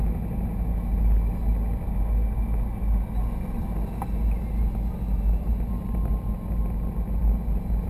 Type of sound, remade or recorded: recorded